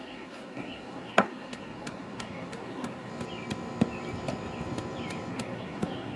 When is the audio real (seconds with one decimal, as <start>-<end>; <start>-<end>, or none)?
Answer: 3.1-5.3